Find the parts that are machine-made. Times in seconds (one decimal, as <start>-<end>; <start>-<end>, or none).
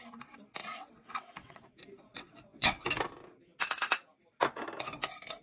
0.6-1.6; 2.1-2.8